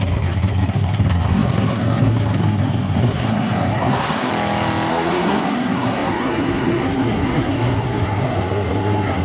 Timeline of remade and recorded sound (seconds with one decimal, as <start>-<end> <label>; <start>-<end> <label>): 0.0-4.3 remade; 4.3-4.9 recorded; 4.9-9.2 remade